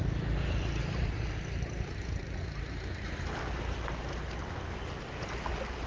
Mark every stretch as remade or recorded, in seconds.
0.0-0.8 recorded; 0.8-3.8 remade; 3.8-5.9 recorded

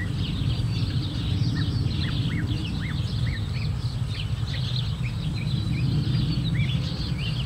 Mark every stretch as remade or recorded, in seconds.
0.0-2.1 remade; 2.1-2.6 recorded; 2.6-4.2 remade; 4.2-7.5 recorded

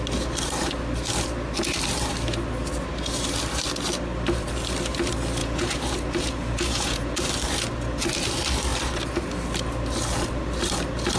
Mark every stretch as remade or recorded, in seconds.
0.0-5.4 recorded; 5.4-7.2 remade; 7.2-11.2 recorded